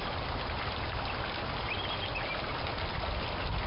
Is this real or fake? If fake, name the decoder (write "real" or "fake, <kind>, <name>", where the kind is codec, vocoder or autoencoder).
real